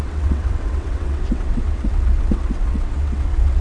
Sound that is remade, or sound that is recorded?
remade